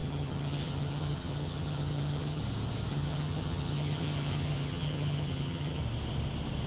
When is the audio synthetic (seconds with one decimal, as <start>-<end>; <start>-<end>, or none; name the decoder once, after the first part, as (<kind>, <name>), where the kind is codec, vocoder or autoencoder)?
0.0-2.4 (vocoder, HiFi-GAN); 2.9-5.8